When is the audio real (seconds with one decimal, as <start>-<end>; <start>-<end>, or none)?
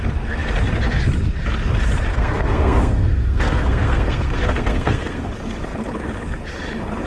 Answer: 0.0-2.1; 5.3-7.1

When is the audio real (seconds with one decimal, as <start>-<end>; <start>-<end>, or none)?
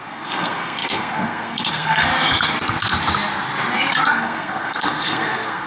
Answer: 2.1-4.1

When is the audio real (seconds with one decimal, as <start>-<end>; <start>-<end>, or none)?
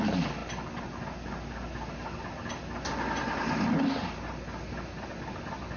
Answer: 0.0-5.8